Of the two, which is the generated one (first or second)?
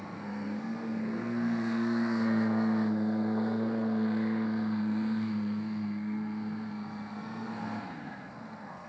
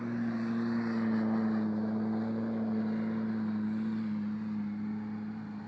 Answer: first